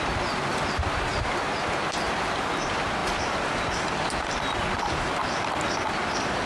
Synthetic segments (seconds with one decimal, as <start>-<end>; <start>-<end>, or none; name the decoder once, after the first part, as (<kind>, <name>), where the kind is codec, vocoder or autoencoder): 1.1-2.5 (vocoder, BigVGAN v2); 3.0-4.3